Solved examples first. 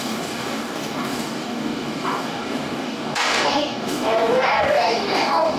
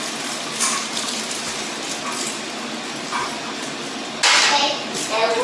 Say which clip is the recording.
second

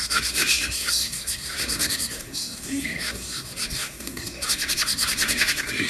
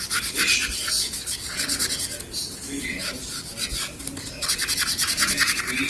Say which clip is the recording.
second